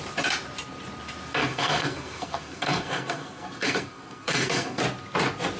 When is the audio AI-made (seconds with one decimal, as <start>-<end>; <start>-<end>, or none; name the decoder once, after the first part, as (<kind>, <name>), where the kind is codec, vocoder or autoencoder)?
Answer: 1.4-4.8 (codec, SNAC)